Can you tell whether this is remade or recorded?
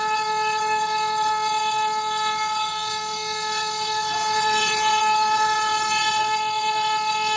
remade